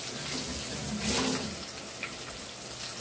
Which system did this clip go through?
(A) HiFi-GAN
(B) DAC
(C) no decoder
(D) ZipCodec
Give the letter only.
C